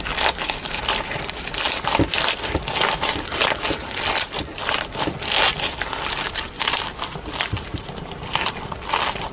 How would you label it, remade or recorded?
recorded